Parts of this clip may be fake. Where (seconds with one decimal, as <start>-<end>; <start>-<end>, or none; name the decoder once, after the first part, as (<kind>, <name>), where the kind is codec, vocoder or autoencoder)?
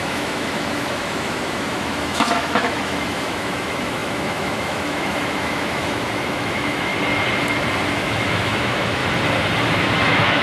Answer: 0.0-6.9 (autoencoder, DAC-VAE); 7.9-9.0; 9.6-10.4